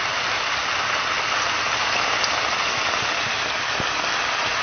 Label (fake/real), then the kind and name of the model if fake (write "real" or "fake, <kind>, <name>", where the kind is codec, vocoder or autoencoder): real